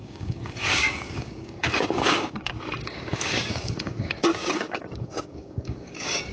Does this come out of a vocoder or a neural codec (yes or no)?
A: yes